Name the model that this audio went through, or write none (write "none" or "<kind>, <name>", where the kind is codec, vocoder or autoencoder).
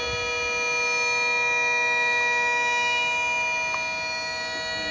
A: none